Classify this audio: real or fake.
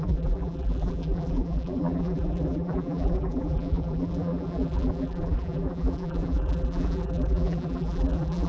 fake